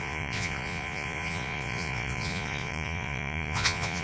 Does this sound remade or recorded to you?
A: remade